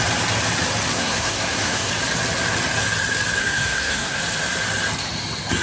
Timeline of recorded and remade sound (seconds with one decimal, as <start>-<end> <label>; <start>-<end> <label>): 0.0-0.9 recorded; 0.9-1.9 remade; 1.9-3.4 recorded; 3.4-4.2 remade; 4.2-5.6 recorded